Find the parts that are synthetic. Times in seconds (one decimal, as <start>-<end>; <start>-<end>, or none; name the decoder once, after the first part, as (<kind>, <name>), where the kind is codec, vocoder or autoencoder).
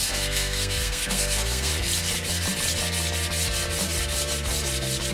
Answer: 0.0-1.7 (codec, SNAC)